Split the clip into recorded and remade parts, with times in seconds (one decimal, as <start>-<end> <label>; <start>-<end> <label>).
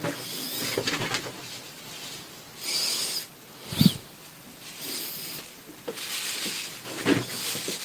0.0-7.8 recorded